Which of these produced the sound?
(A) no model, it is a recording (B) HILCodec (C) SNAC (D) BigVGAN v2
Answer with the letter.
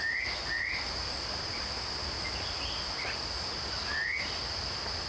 A